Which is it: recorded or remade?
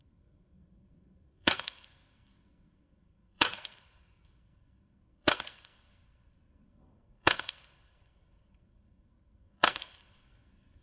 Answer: remade